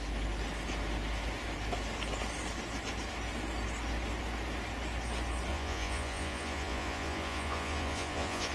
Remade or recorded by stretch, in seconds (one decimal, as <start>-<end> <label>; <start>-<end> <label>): 0.0-5.5 recorded; 5.5-8.5 remade